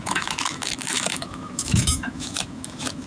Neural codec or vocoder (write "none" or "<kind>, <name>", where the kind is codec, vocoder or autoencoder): autoencoder, DAC-VAE